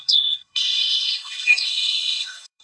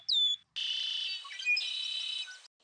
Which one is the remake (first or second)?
first